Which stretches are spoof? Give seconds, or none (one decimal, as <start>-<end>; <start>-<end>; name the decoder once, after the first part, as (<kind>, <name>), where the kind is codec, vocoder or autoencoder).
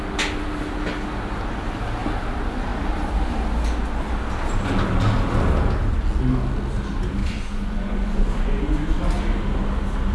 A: 7.2-9.0 (vocoder, Vocos)